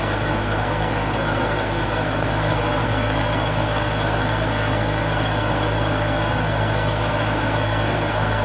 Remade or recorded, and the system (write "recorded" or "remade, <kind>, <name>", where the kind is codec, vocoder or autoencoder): remade, codec, SNAC